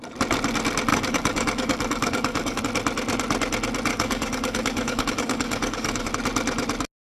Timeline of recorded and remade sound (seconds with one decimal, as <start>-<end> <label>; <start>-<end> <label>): 0.0-0.9 recorded; 0.9-2.6 remade; 2.6-3.9 recorded; 3.9-6.1 remade; 6.1-7.0 recorded